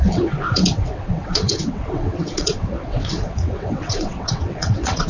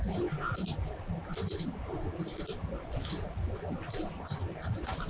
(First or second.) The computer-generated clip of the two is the first